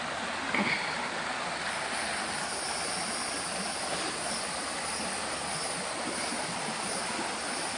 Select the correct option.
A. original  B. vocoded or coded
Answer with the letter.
A